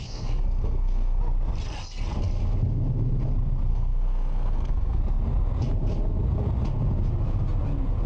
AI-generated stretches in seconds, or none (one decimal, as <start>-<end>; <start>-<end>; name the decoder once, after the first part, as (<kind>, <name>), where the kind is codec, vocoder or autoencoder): 0.0-1.2 (codec, SNAC); 3.7-5.0